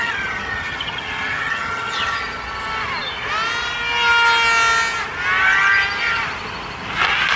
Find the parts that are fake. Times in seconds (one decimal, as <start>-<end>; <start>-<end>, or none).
0.0-2.2